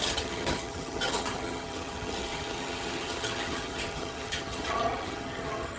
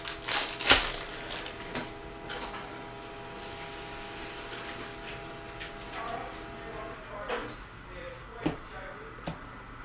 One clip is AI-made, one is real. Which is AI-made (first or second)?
first